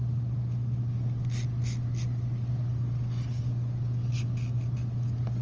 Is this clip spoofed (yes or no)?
no